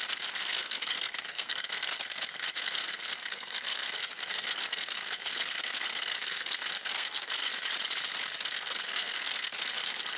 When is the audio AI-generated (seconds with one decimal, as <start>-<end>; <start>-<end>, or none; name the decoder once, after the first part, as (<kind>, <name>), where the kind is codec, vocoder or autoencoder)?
0.0-7.5 (codec, SNAC); 8.4-10.2